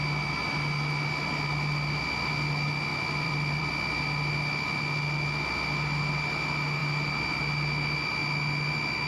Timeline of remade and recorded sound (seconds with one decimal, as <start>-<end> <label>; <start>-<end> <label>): 0.0-2.9 recorded; 2.9-3.7 remade; 3.7-9.1 recorded